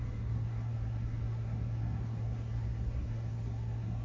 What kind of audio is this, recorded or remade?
remade